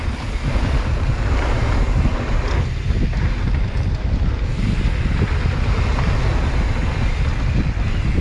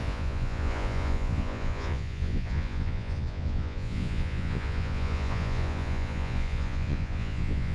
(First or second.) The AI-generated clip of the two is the second